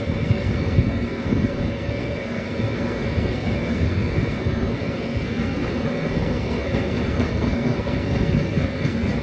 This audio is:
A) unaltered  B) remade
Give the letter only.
B